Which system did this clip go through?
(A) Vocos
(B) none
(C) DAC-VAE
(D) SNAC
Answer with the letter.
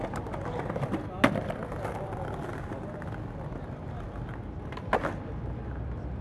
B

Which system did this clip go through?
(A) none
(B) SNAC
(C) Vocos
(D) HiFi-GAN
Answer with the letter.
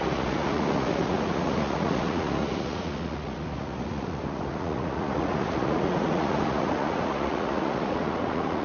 C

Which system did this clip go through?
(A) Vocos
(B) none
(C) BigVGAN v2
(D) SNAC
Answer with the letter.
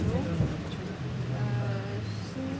B